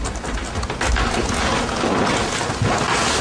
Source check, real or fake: real